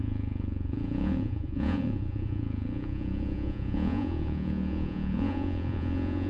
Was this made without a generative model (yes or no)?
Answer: no